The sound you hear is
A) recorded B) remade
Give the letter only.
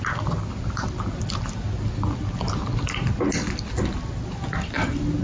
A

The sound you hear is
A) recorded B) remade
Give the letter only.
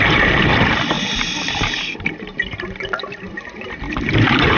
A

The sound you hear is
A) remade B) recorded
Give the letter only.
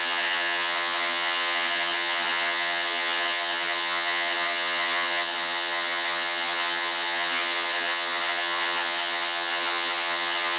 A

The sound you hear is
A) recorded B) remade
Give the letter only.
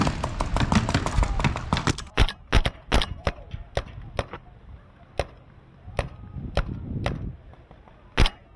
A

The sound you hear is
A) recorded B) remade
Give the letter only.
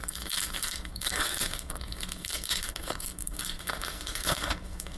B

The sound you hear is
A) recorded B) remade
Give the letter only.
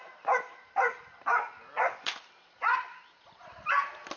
A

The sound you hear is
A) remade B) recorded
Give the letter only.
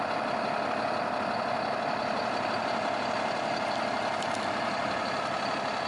B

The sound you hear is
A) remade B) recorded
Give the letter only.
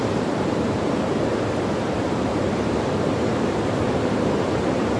A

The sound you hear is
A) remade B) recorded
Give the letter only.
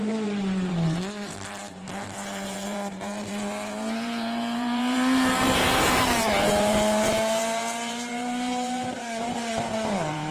A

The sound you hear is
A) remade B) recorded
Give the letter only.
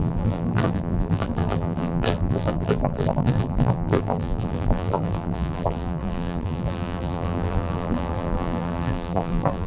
A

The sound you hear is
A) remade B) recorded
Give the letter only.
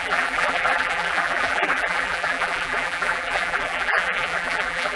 A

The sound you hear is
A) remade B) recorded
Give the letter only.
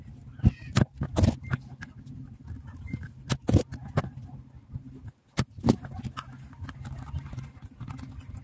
B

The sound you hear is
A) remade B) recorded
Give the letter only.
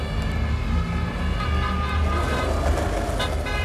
B